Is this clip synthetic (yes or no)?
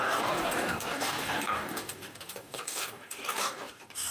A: yes